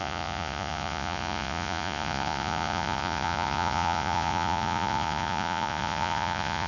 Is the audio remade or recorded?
remade